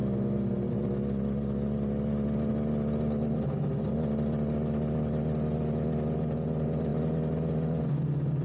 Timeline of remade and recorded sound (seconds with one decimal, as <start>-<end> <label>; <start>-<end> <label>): 0.0-8.4 recorded